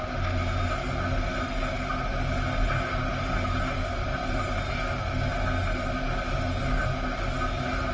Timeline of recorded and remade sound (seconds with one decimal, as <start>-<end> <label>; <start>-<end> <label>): 0.0-4.2 recorded; 4.2-5.0 remade; 5.0-7.9 recorded